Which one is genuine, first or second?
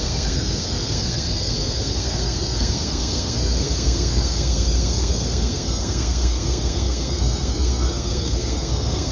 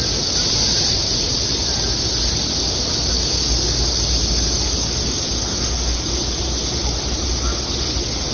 second